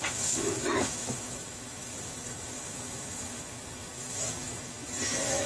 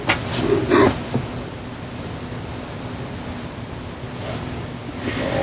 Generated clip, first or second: first